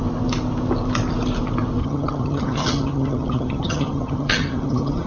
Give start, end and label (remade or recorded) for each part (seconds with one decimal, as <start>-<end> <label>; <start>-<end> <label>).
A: 0.0-1.8 recorded; 1.8-5.1 remade